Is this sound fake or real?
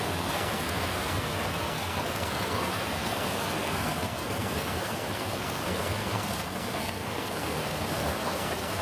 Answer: fake